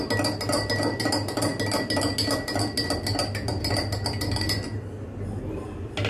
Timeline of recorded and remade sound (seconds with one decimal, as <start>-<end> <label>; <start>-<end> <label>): 0.0-6.1 recorded